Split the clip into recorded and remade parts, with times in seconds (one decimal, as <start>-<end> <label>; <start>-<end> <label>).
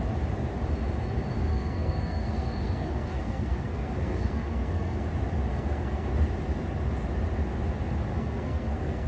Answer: 0.0-1.5 recorded; 1.5-5.1 remade; 5.1-5.5 recorded; 5.5-6.1 remade; 6.1-8.1 recorded; 8.1-9.1 remade